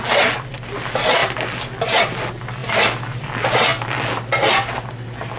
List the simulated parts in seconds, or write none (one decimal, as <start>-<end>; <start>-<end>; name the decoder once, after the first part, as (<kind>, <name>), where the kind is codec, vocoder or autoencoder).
2.6-3.3 (vocoder, BigVGAN v2)